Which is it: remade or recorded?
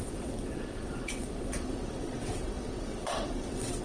remade